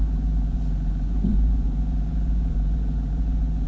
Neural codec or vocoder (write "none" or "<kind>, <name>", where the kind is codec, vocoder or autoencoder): vocoder, Vocos